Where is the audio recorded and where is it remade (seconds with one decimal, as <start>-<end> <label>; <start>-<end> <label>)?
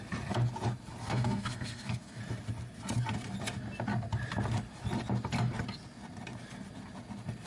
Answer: 0.0-1.0 recorded; 1.0-2.2 remade; 2.2-7.5 recorded